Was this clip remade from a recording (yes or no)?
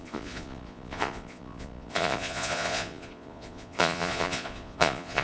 yes